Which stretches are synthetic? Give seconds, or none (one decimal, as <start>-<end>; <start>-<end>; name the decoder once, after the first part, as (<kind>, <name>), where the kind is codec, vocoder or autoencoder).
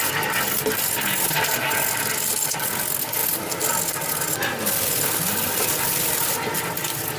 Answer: none